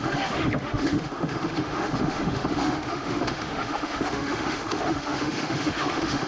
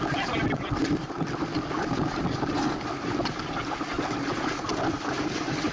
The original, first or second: second